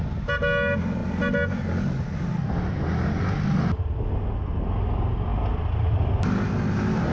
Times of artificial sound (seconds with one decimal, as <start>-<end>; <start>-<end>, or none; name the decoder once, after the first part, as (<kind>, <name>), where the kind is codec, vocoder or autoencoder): none